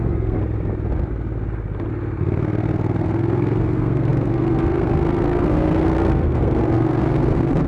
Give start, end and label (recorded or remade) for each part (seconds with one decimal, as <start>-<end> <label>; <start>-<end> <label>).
0.0-0.4 remade; 0.4-2.2 recorded; 2.2-7.7 remade